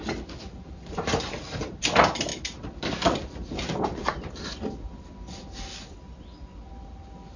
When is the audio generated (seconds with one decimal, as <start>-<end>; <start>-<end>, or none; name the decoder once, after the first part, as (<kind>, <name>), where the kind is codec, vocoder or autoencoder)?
none

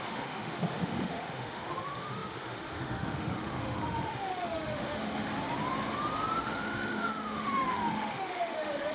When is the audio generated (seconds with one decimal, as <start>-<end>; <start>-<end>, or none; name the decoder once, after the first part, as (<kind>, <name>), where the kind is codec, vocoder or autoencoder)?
0.0-5.3 (autoencoder, DAC-VAE); 6.4-8.9

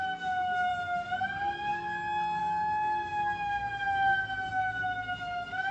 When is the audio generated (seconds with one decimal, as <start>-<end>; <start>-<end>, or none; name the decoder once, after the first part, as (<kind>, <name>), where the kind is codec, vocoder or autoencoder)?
0.0-0.7 (autoencoder, DAC-VAE); 2.4-5.7

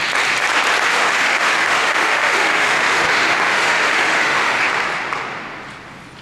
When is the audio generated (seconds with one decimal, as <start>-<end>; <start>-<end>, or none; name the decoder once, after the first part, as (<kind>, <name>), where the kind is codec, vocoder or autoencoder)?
0.9-4.6 (autoencoder, DAC-VAE)

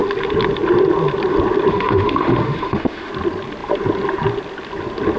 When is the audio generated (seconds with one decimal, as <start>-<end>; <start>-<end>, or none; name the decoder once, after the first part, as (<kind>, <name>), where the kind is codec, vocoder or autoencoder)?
1.7-3.1 (autoencoder, DAC-VAE)

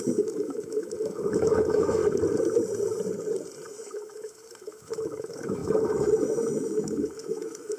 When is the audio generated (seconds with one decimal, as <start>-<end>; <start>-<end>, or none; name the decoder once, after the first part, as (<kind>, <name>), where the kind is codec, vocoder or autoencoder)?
0.0-2.0 (autoencoder, DAC-VAE); 3.7-7.8

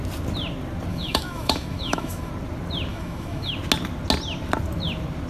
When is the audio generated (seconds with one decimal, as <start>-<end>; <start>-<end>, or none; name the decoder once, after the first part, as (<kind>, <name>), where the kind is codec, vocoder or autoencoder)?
0.9-2.3 (autoencoder, DAC-VAE); 2.9-3.5

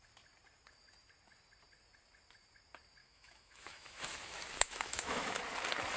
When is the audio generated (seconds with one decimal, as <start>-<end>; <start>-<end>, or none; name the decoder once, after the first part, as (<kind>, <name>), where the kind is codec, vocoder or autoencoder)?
3.0-5.4 (autoencoder, DAC-VAE)